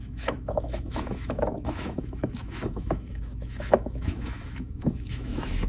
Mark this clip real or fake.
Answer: fake